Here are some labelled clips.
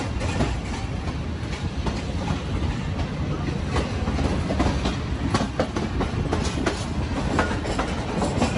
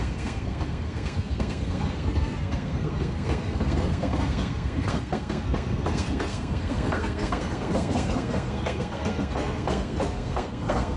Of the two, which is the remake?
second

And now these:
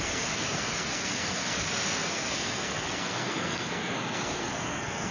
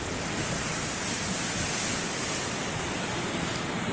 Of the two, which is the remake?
first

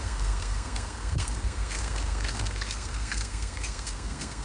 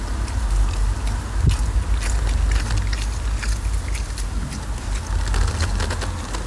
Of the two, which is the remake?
first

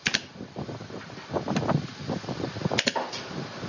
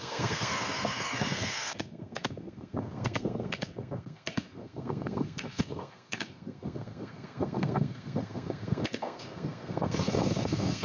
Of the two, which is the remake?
second